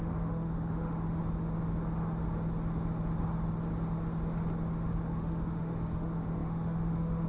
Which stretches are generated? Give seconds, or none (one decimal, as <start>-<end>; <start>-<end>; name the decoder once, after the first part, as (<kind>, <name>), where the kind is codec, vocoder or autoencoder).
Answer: 0.0-1.2 (autoencoder, DAC-VAE); 5.1-7.3